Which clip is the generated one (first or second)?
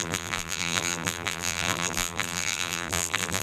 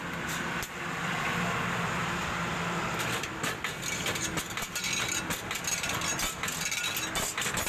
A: first